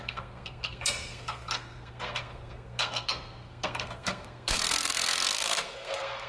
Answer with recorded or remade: remade